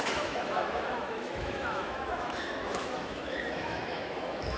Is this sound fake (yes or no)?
yes